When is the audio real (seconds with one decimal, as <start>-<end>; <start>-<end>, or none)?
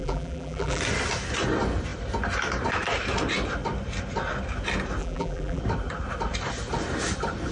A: 0.8-5.0; 5.6-7.5